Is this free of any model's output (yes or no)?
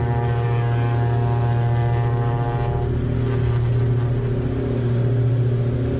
yes